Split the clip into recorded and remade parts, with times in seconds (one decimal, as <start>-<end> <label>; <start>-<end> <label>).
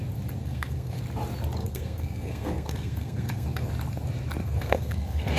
0.0-0.4 recorded; 0.4-1.0 remade; 1.0-1.6 recorded; 1.6-3.7 remade; 3.7-4.4 recorded; 4.4-5.4 remade